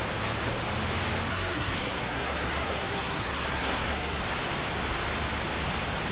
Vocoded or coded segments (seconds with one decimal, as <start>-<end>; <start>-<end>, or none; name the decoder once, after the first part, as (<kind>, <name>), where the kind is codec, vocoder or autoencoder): 1.3-4.2 (codec, SNAC)